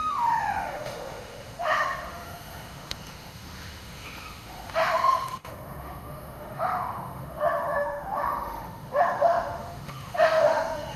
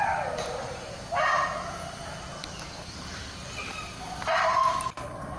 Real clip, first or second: second